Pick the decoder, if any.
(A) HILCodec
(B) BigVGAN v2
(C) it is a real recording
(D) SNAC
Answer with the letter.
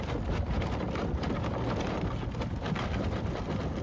C